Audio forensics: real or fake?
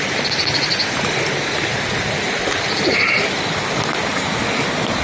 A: real